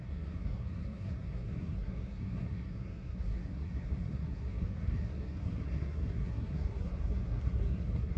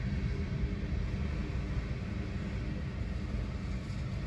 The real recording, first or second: second